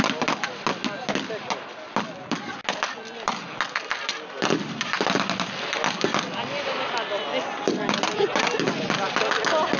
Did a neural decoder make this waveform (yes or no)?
no